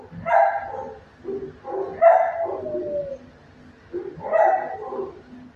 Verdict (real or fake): real